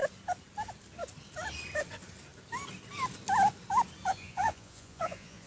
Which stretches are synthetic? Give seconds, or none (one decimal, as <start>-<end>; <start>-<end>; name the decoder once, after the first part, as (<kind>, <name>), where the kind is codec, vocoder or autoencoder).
4.1-5.5 (vocoder, Vocos)